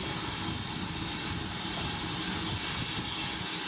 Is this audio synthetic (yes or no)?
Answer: no